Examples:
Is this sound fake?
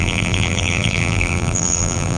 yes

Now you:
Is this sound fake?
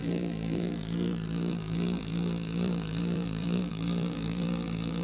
yes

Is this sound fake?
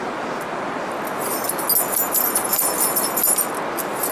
no